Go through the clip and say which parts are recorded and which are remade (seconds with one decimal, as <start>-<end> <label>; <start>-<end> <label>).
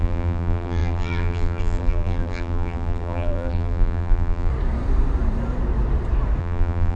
0.0-4.5 remade; 4.5-6.4 recorded; 6.4-7.0 remade